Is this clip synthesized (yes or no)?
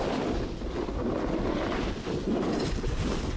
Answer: no